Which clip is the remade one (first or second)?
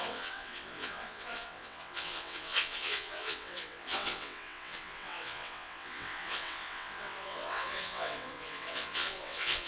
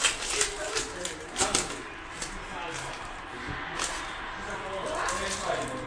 first